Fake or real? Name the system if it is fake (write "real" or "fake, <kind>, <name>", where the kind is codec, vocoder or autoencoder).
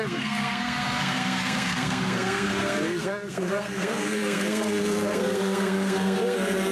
fake, codec, SNAC